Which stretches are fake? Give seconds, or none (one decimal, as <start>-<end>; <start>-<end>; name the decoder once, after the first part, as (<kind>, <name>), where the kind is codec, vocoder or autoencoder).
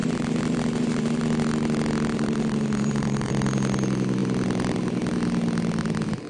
0.0-1.2 (vocoder, BigVGAN v2); 2.1-3.3